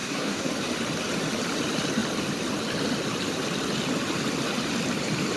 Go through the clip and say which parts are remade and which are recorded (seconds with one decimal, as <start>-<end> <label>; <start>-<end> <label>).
0.0-0.5 remade; 0.5-5.4 recorded